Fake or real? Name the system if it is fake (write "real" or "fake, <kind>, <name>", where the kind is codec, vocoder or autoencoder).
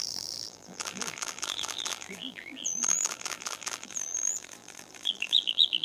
fake, vocoder, BigVGAN v2